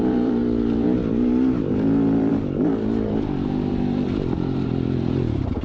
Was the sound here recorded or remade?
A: remade